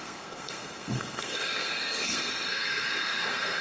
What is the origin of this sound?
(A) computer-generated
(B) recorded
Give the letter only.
A